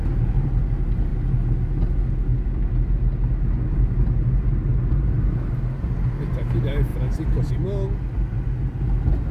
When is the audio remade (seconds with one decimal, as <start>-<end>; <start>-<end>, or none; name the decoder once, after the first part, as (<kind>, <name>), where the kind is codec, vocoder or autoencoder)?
none